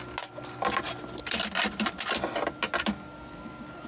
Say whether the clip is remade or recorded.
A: recorded